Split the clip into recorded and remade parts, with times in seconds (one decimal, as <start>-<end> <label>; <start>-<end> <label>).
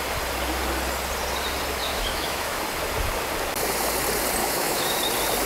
0.0-1.8 recorded; 1.8-2.6 remade; 2.6-4.4 recorded; 4.4-5.0 remade; 5.0-5.5 recorded